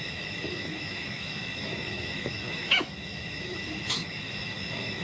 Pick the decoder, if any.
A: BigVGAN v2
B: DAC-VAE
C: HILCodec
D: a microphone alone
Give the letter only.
B